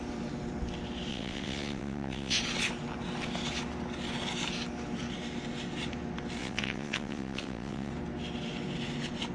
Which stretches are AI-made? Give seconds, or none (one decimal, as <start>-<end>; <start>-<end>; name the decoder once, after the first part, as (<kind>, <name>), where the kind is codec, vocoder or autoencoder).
1.1-2.4 (vocoder, WaveNeXt); 6.4-7.9